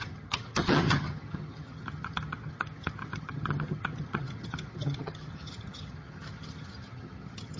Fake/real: fake